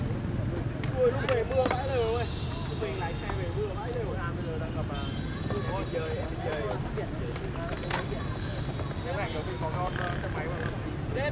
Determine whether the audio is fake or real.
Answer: real